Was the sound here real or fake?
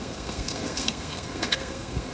fake